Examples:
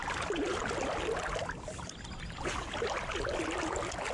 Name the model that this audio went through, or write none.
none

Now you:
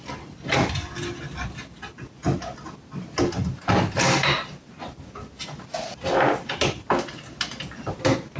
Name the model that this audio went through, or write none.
none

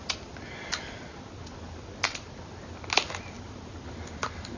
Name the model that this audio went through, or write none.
none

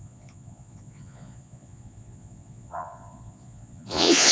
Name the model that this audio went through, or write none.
vocoder, Vocos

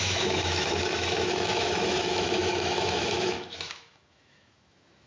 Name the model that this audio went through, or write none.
autoencoder, DAC-VAE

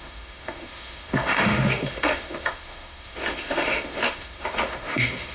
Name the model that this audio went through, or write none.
autoencoder, DAC-VAE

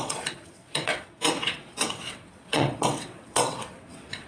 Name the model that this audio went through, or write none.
vocoder, WaveNeXt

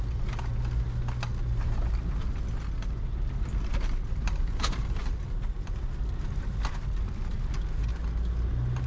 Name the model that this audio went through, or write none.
none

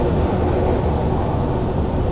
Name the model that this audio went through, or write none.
none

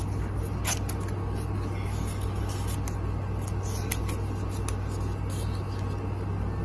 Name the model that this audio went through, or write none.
none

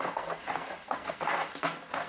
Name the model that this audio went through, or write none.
codec, SNAC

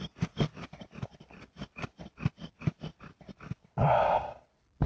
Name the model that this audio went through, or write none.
none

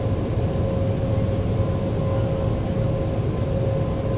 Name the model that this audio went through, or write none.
none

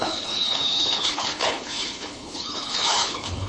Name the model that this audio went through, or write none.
codec, HILCodec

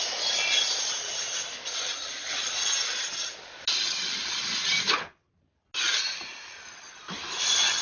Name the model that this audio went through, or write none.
none